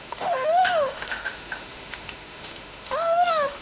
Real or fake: fake